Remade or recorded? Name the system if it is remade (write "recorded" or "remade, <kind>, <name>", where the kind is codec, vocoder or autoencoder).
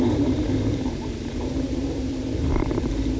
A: remade, vocoder, BigVGAN v2